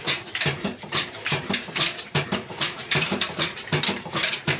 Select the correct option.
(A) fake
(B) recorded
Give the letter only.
A